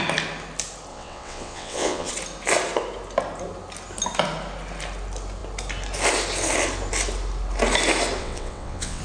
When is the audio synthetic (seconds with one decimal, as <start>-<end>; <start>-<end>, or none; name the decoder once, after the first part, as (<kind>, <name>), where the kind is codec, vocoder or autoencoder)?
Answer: 0.9-2.1 (vocoder, WaveNeXt); 8.2-9.0